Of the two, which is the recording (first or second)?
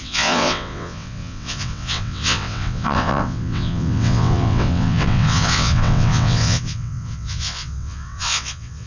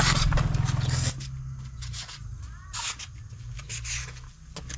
second